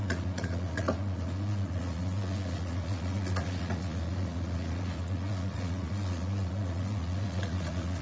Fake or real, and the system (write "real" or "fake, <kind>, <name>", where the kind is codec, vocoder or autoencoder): fake, vocoder, Vocos